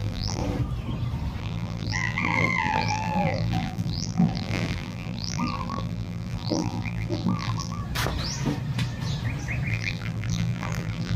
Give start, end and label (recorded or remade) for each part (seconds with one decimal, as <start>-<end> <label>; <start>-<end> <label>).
0.0-0.4 remade; 0.4-1.4 recorded; 1.4-7.8 remade; 7.8-9.7 recorded; 9.7-11.2 remade